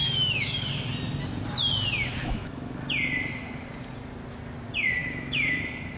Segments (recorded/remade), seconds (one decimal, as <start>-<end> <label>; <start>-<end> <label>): 0.0-0.7 remade; 0.7-2.2 recorded; 2.2-2.8 remade; 2.8-5.0 recorded; 5.0-5.6 remade; 5.6-6.0 recorded